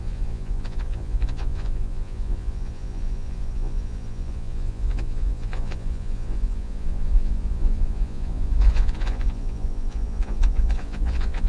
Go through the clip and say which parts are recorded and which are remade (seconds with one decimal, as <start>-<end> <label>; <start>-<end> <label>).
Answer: 0.0-11.5 remade